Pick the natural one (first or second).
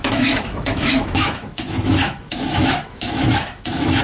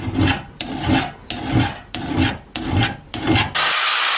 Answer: second